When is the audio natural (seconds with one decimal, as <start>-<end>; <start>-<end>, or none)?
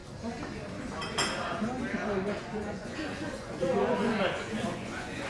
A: 0.0-2.4